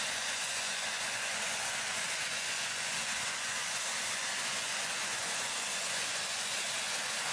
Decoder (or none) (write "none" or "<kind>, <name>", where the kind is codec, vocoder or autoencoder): vocoder, Vocos